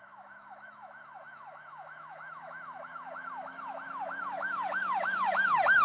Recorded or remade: remade